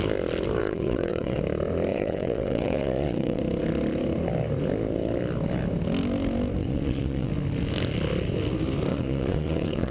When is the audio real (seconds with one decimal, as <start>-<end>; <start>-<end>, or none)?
0.0-0.6; 1.4-1.9; 3.4-6.6; 7.3-8.9